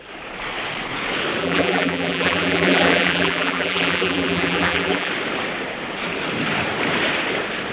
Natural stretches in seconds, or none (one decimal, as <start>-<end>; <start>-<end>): 0.0-1.4; 5.1-7.7